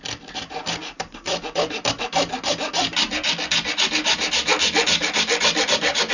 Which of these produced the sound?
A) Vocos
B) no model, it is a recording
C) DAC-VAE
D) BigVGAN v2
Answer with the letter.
B